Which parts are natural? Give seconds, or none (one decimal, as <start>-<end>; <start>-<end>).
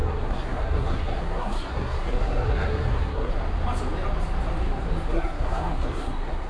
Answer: 3.3-5.1